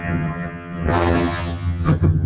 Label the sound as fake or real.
fake